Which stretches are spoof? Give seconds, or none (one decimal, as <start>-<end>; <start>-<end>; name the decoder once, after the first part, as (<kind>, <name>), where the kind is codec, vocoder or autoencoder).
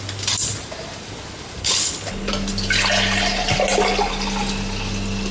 1.6-2.3 (codec, HILCodec)